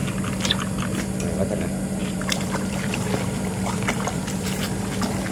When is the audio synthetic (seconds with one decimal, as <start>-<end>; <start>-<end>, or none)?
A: 2.0-5.3